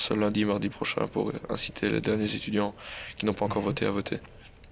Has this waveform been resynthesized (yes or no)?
no